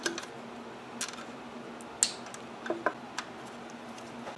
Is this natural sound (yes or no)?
yes